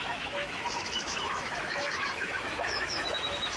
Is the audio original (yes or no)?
no